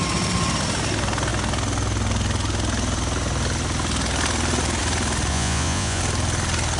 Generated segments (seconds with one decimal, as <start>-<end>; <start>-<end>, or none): 5.3-6.0